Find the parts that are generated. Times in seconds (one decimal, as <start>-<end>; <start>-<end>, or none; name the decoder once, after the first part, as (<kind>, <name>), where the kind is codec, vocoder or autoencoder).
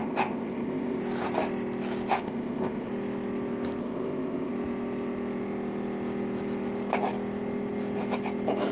0.0-1.0 (codec, ZipCodec); 2.1-2.9; 3.8-4.5